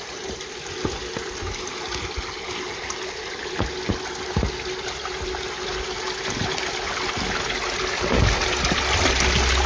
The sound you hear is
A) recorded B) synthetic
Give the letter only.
A